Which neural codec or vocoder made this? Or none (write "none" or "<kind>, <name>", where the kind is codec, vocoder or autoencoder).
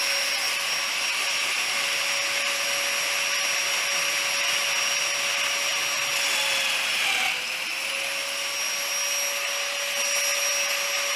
none